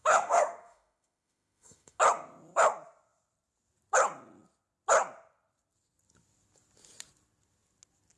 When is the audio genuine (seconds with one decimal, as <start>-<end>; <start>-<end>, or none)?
2.0-8.2

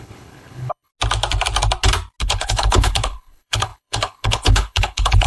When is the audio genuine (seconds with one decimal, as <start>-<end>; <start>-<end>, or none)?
0.9-2.2

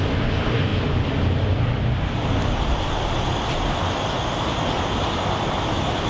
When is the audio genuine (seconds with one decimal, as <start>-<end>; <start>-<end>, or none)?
0.0-6.1

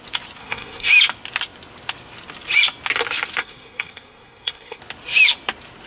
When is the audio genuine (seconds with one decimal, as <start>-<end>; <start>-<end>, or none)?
0.0-0.4; 0.9-3.4; 4.8-5.9

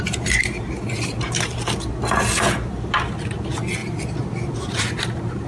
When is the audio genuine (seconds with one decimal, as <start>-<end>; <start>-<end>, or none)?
0.0-5.5

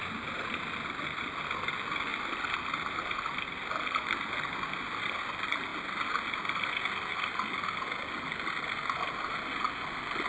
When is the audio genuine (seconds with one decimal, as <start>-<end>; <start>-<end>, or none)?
0.0-2.1; 5.2-10.3

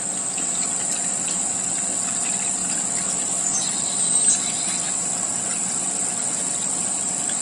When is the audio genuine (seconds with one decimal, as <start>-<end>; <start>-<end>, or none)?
0.0-7.4

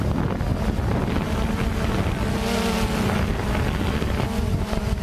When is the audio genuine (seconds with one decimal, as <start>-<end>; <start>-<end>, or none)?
0.0-5.0